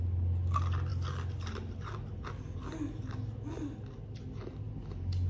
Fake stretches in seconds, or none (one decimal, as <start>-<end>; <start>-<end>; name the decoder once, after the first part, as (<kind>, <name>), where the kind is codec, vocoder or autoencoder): none